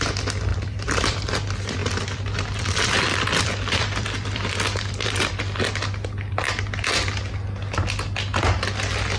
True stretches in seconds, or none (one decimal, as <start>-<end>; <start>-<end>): 0.0-0.5; 1.3-1.8; 5.4-9.2